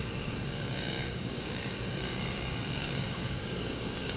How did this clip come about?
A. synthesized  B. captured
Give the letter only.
A